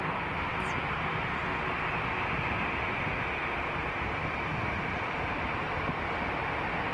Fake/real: real